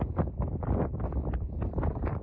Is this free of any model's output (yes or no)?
yes